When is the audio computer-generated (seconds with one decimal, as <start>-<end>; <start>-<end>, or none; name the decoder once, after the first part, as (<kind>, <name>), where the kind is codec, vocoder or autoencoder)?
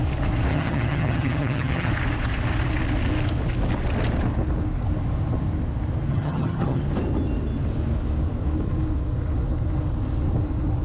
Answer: 0.5-1.9 (vocoder, HiFi-GAN); 6.1-6.8